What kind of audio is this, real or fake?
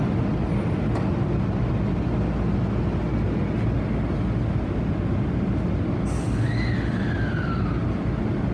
real